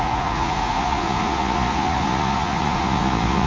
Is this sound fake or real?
fake